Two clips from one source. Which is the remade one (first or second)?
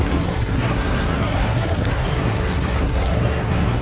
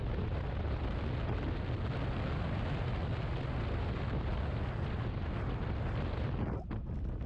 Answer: first